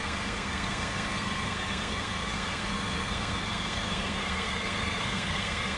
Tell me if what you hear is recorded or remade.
remade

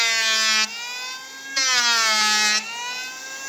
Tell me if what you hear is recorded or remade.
recorded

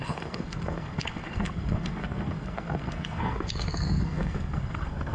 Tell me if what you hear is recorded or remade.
remade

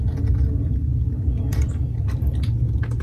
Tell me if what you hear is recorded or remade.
recorded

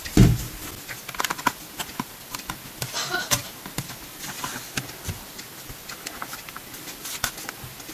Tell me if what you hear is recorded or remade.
recorded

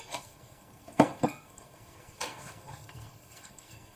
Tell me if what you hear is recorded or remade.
remade